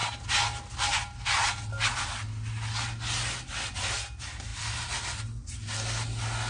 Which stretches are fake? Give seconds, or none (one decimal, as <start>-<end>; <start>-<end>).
none